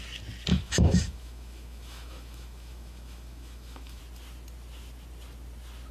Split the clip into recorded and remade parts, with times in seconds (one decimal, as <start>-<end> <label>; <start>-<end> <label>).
0.0-0.5 recorded; 0.5-4.0 remade; 4.0-5.9 recorded